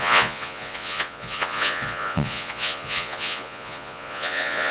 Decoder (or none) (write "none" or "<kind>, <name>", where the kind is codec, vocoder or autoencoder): vocoder, Vocos